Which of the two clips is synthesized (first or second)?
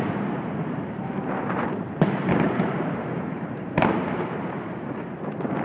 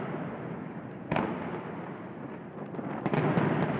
first